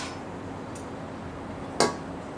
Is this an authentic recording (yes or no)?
yes